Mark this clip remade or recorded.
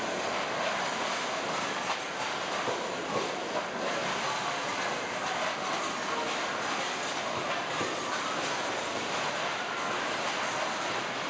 recorded